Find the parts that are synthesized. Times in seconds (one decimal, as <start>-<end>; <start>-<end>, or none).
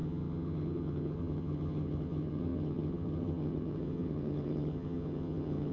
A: 0.0-5.7